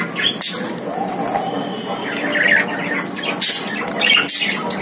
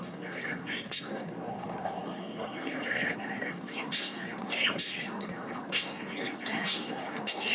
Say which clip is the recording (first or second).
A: first